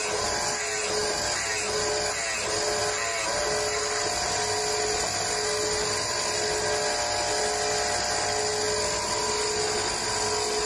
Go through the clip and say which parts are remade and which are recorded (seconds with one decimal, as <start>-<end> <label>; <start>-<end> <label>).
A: 0.0-10.7 recorded